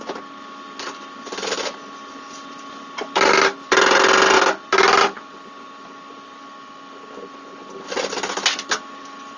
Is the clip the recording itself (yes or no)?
yes